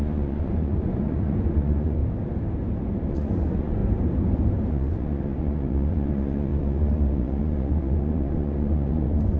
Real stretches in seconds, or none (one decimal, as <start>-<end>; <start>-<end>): 2.0-3.1; 3.8-4.7